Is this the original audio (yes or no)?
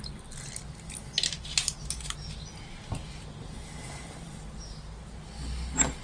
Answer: yes